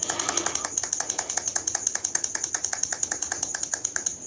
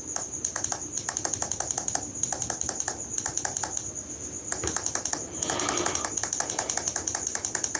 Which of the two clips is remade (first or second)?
first